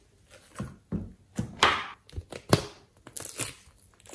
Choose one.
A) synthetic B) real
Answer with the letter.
B